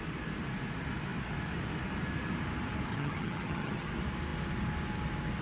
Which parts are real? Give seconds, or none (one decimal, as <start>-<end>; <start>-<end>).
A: 0.0-2.9; 3.9-5.4